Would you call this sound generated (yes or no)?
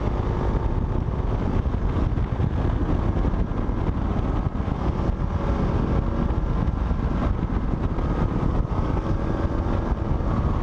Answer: no